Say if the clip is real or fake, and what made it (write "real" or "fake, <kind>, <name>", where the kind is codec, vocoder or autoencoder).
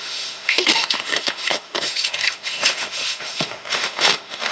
fake, autoencoder, DAC-VAE